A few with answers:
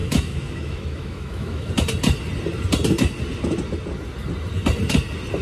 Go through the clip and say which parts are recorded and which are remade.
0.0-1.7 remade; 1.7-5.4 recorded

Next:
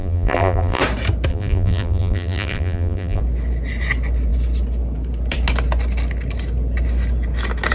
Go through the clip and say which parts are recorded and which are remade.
0.0-0.8 remade; 0.8-1.3 recorded; 1.3-3.2 remade; 3.2-7.7 recorded

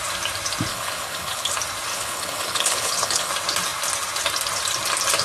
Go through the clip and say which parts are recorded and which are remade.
0.0-0.7 recorded; 0.7-1.5 remade; 1.5-1.9 recorded; 1.9-3.3 remade; 3.3-5.2 recorded

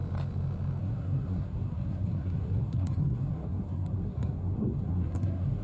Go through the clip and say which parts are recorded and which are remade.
0.0-0.8 recorded; 0.8-5.6 remade